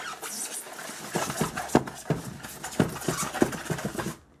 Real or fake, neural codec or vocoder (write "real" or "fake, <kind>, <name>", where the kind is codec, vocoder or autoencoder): real